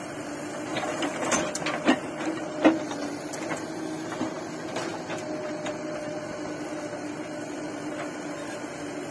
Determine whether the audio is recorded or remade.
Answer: recorded